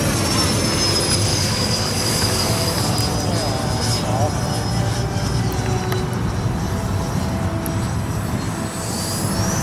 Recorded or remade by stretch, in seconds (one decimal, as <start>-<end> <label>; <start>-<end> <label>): 0.0-1.3 recorded; 1.3-2.9 remade; 2.9-9.6 recorded